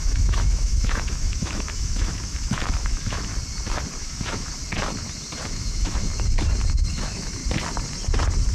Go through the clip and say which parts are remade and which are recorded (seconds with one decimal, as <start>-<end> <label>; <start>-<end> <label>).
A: 0.0-3.3 remade; 3.3-4.0 recorded; 4.0-4.6 remade; 4.6-5.4 recorded; 5.4-6.1 remade; 6.1-6.9 recorded; 6.9-7.4 remade; 7.4-8.5 recorded